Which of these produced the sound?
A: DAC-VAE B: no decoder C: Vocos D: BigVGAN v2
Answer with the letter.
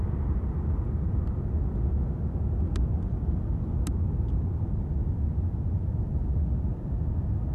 B